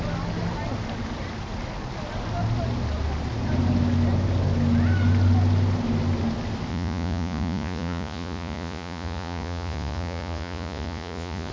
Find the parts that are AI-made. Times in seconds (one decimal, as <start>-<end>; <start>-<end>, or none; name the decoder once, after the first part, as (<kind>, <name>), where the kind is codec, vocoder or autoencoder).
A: 6.7-11.5 (vocoder, Vocos)

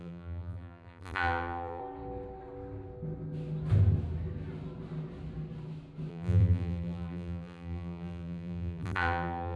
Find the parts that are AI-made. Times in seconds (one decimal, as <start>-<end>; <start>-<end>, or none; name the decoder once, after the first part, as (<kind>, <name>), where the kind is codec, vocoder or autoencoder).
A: 0.0-1.8 (vocoder, BigVGAN v2); 6.1-9.6

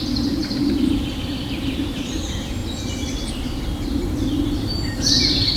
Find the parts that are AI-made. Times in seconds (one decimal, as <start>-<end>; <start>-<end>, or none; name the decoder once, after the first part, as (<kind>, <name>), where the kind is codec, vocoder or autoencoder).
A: 0.4-2.2 (vocoder, BigVGAN v2)